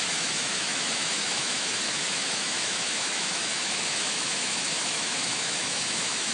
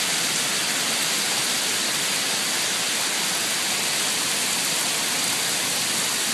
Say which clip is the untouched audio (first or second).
second